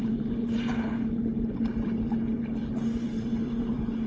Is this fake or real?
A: fake